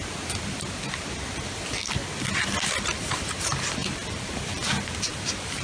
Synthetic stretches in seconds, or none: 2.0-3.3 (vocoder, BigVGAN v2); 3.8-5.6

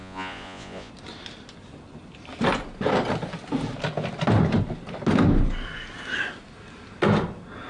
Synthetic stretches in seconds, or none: 0.0-0.9 (vocoder, Vocos)